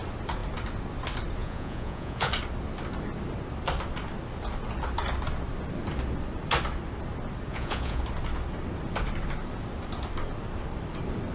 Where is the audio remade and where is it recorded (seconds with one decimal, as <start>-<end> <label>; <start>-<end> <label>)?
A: 0.0-1.4 recorded; 1.4-2.3 remade; 2.3-7.5 recorded; 7.5-8.0 remade; 8.0-11.3 recorded